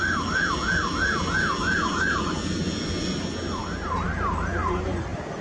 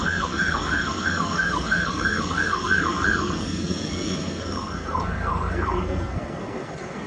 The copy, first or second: second